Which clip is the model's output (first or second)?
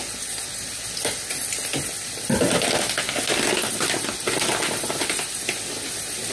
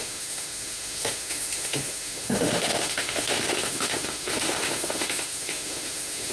second